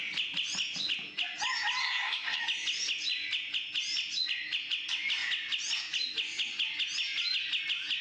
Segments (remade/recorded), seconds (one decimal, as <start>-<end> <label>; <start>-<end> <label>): 0.0-1.8 recorded; 1.8-2.4 remade; 2.4-8.0 recorded